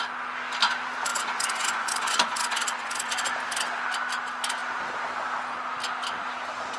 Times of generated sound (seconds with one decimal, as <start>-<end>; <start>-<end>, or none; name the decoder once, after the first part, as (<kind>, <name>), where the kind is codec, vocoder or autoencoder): 1.1-3.1 (vocoder, Vocos)